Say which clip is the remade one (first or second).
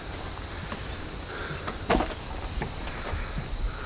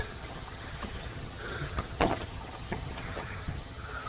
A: second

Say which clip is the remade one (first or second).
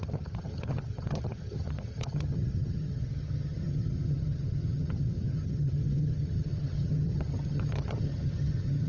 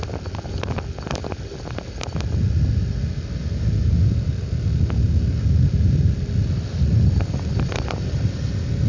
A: first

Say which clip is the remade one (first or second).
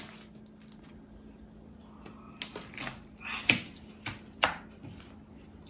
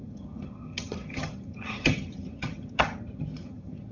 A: second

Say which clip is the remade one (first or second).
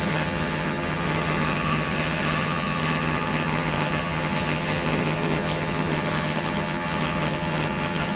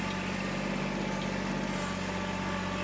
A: first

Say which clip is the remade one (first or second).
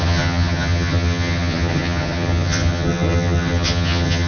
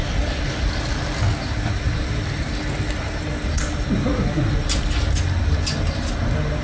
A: first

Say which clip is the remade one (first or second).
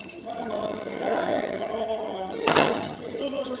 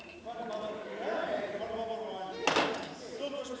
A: first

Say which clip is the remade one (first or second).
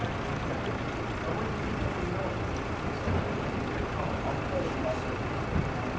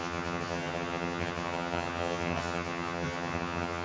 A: second